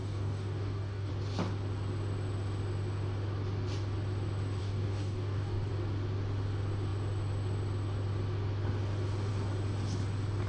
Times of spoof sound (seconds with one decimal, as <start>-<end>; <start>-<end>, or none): 0.0-1.1; 4.6-5.7